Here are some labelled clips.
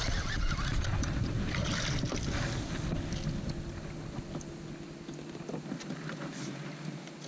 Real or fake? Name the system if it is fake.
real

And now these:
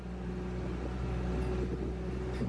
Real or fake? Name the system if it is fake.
real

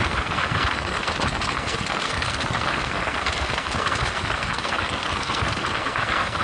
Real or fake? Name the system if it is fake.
fake, codec, SNAC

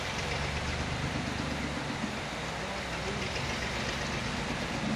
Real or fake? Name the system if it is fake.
real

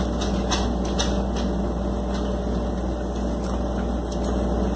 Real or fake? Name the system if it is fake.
real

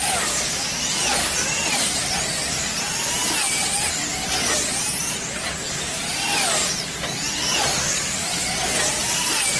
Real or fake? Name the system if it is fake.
real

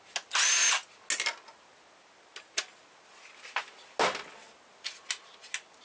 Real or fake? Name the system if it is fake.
real